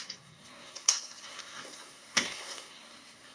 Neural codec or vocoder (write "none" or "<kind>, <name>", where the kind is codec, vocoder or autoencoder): codec, SNAC